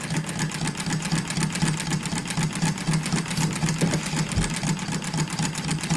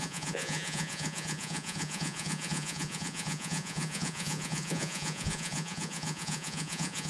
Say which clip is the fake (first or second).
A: second